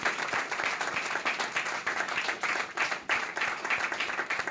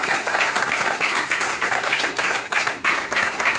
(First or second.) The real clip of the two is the first